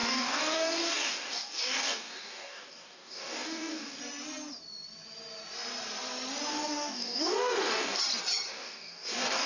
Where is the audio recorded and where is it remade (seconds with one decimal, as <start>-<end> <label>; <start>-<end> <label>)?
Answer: 0.0-4.0 remade; 4.0-6.5 recorded; 6.5-8.0 remade; 8.0-8.5 recorded; 8.5-9.5 remade

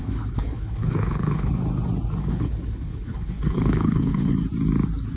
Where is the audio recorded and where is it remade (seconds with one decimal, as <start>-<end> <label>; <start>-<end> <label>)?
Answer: 0.0-1.5 remade; 1.5-2.2 recorded; 2.2-4.3 remade; 4.3-5.2 recorded

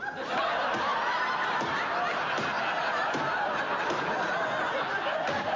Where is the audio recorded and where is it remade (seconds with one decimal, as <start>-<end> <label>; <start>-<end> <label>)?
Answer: 0.0-5.6 recorded

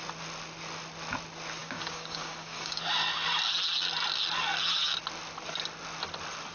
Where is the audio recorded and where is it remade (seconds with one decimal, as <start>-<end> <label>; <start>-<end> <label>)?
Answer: 0.0-1.6 recorded; 1.6-2.8 remade; 2.8-6.5 recorded

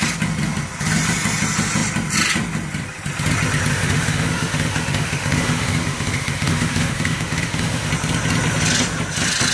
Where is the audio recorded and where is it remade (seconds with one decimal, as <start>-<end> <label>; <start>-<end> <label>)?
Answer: 0.0-3.7 recorded; 3.7-7.9 remade; 7.9-9.5 recorded

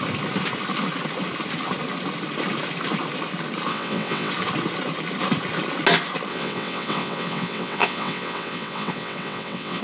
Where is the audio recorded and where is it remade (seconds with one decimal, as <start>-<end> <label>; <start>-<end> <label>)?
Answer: 0.0-3.7 recorded; 3.7-4.3 remade; 4.3-6.3 recorded; 6.3-9.8 remade

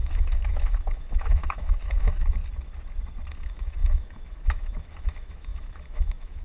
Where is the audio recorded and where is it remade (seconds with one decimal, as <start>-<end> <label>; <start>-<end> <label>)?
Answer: 0.0-2.4 remade; 2.4-3.3 recorded; 3.3-6.4 remade